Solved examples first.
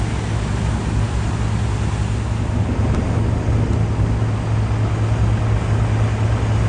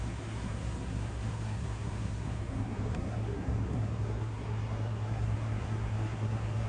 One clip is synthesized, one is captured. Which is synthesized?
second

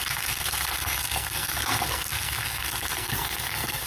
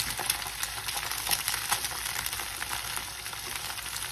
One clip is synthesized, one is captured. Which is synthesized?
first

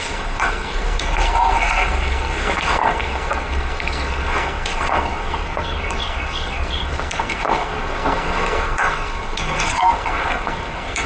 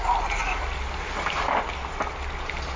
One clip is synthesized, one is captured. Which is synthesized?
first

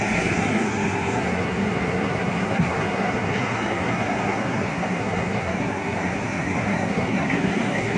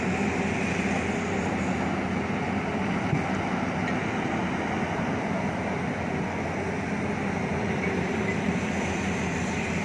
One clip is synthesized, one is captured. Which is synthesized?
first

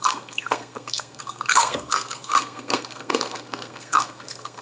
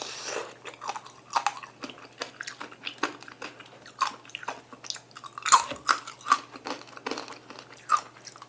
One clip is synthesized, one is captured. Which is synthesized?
first